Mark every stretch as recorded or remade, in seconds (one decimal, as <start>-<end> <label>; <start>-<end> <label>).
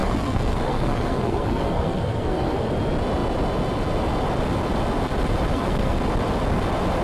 0.0-2.7 remade; 2.7-5.5 recorded; 5.5-6.0 remade; 6.0-7.0 recorded